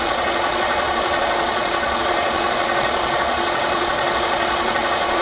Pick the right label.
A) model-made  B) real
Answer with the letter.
A